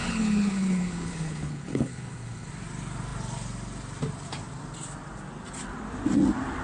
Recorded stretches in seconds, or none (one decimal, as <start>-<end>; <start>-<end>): 2.5-6.6